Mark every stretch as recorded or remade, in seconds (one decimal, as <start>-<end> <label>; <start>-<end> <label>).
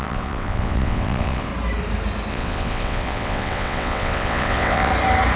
0.0-1.5 remade; 1.5-2.3 recorded; 2.3-4.9 remade; 4.9-5.4 recorded